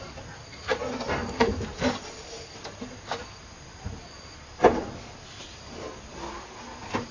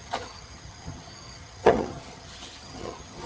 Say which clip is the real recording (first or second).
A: first